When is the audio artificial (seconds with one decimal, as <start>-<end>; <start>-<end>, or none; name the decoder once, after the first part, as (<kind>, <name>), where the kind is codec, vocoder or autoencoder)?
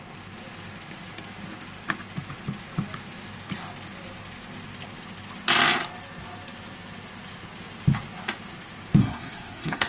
9.0-9.9 (codec, SNAC)